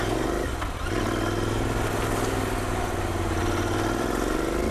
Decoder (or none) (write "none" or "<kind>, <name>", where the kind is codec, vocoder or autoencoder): none